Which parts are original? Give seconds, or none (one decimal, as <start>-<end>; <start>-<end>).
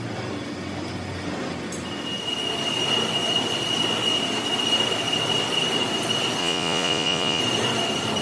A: 0.0-6.4; 7.4-8.2